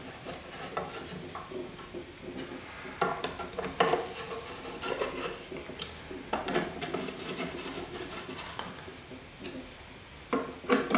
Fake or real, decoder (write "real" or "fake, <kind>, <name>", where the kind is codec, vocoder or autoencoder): real